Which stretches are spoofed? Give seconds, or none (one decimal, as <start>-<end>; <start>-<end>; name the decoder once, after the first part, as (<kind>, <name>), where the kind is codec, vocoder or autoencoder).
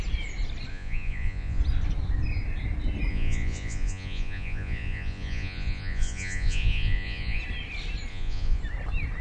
0.7-1.6 (vocoder, Vocos); 3.1-7.4; 8.1-8.6